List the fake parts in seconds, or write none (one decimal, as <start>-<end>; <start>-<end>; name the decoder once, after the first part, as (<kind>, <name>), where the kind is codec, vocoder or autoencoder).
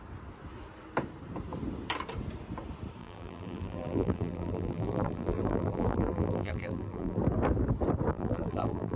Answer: 3.0-7.2 (vocoder, BigVGAN v2); 8.1-9.0